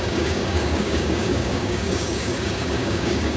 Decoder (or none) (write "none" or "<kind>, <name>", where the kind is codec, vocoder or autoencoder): codec, DAC